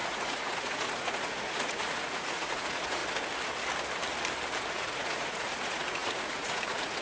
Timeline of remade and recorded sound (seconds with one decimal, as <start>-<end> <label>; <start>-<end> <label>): 0.0-3.0 remade; 3.0-4.7 recorded; 4.7-7.0 remade